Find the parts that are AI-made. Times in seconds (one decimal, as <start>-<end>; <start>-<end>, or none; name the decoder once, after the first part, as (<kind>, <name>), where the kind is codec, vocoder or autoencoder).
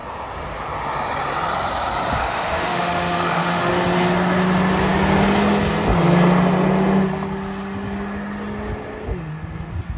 2.2-3.7 (autoencoder, DAC-VAE)